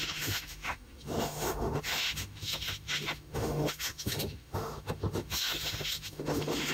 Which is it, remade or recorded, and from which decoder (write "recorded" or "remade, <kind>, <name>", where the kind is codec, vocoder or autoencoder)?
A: remade, autoencoder, DAC-VAE